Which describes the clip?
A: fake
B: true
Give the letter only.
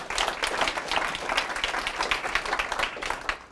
B